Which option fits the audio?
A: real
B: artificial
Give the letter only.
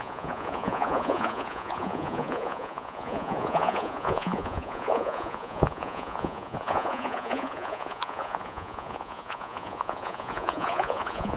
B